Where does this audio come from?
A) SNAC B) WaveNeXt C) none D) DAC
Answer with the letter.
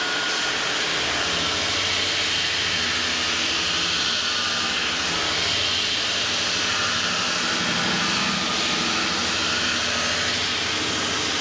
C